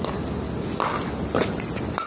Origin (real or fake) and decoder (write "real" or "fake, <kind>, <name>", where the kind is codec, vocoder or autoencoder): real